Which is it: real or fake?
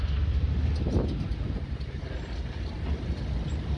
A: real